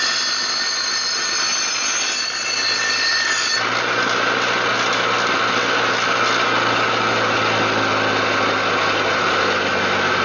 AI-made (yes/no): no